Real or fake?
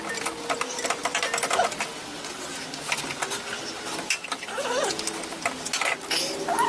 real